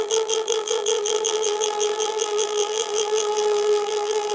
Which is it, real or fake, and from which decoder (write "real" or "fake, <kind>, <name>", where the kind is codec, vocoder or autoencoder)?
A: fake, vocoder, BigVGAN v2